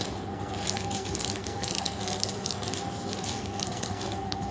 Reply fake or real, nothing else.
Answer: fake